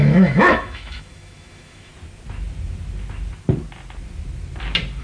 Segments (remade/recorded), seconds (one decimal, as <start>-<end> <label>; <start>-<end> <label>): 0.0-1.9 remade; 1.9-5.0 recorded